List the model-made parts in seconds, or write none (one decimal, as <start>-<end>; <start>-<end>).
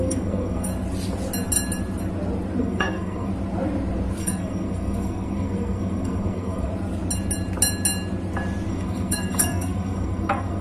0.0-0.7; 2.6-3.3; 4.2-6.7; 8.7-10.6